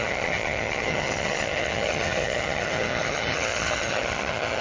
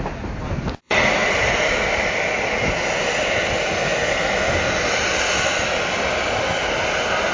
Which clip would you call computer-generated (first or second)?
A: first